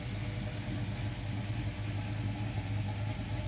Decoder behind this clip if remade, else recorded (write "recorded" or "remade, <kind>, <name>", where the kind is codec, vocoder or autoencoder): recorded